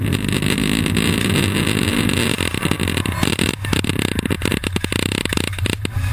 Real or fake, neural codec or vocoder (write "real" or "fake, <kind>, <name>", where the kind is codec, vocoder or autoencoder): real